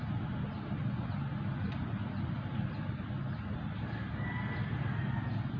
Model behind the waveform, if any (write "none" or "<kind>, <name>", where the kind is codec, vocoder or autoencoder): none